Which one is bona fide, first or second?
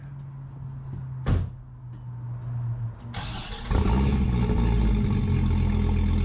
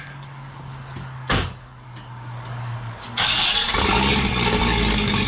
first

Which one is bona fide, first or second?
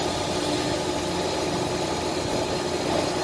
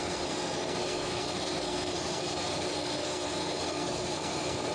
first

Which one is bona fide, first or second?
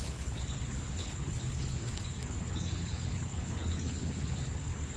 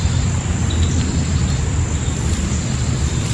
second